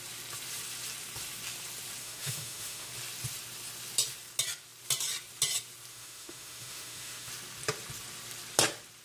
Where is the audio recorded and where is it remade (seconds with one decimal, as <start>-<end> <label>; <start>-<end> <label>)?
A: 0.0-2.0 recorded; 2.0-2.9 remade; 2.9-5.9 recorded; 5.9-7.3 remade; 7.3-9.0 recorded